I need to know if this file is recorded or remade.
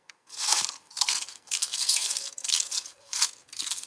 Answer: remade